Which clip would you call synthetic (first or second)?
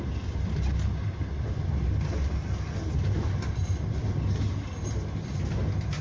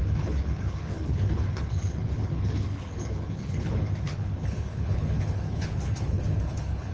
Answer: second